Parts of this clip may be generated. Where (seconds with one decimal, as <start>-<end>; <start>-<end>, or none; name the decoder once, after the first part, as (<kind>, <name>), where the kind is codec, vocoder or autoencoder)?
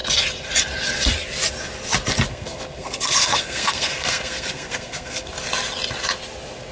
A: 2.3-5.3 (codec, SNAC)